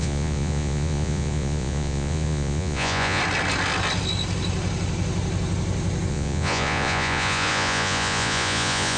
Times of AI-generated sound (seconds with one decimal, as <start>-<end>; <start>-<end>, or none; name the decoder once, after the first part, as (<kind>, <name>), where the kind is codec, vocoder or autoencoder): 0.0-3.2 (vocoder, Vocos); 6.1-9.0

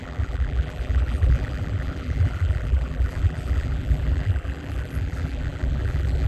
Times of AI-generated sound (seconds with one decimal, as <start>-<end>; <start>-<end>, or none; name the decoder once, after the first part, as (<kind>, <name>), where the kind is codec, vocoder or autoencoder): 0.0-6.3 (vocoder, BigVGAN v2)

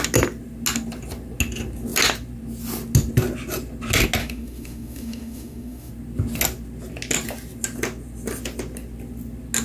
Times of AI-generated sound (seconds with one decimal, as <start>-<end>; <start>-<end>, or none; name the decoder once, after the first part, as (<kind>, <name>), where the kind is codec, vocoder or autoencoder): 4.2-5.9 (autoencoder, DAC-VAE)

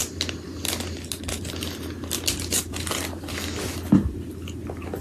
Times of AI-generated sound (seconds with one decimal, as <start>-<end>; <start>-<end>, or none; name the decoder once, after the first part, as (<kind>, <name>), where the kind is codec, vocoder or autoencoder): none

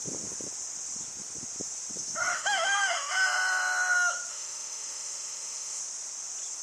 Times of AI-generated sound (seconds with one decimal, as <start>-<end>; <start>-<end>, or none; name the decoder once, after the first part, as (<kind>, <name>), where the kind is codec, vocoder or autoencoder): 2.3-3.1 (autoencoder, DAC-VAE); 4.3-5.8